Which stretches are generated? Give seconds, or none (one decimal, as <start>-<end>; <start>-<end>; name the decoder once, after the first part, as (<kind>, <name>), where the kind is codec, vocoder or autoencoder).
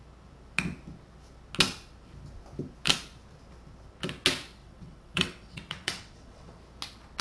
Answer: 4.6-6.6 (vocoder, WaveNeXt)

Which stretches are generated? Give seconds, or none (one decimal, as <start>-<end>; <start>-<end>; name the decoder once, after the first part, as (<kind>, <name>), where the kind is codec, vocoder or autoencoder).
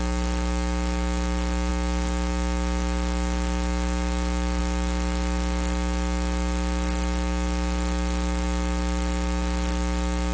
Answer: none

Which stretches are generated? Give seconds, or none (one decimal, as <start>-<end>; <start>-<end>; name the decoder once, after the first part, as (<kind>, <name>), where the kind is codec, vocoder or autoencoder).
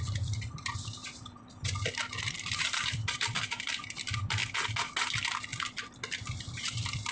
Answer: 0.0-1.0 (vocoder, BigVGAN v2); 2.2-4.4; 5.1-5.5; 6.6-7.1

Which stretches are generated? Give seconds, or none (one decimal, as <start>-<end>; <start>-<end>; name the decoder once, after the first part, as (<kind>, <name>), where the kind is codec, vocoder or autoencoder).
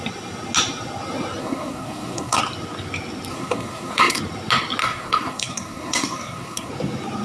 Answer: 1.4-2.4 (codec, SNAC); 3.3-4.2; 4.8-6.7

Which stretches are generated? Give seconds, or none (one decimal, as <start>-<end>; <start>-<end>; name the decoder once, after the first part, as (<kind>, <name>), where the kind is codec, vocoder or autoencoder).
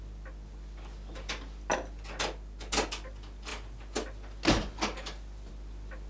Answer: none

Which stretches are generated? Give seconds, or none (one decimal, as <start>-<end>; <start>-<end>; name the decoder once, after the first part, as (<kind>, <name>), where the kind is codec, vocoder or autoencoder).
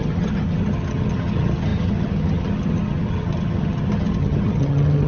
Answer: 0.0-5.1 (vocoder, HiFi-GAN)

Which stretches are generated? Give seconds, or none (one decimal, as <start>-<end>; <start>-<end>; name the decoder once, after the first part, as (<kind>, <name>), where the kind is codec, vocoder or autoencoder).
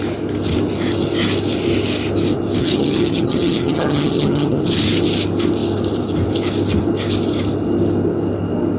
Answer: 2.6-4.6 (vocoder, HiFi-GAN)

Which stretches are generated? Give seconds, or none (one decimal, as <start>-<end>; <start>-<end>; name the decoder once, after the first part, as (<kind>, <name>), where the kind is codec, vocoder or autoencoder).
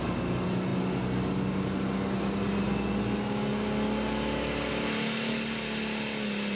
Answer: none